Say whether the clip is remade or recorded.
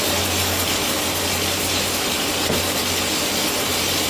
recorded